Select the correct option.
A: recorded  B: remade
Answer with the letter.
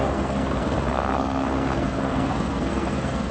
B